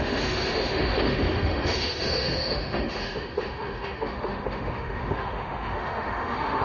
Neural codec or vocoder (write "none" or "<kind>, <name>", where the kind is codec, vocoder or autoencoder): autoencoder, DAC-VAE